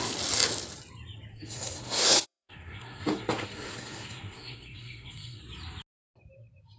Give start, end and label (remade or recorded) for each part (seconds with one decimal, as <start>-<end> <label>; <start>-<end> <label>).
0.0-1.3 recorded; 1.3-5.4 remade; 5.4-6.8 recorded